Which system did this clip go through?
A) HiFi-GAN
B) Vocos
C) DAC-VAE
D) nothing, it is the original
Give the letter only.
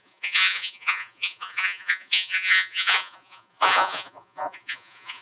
B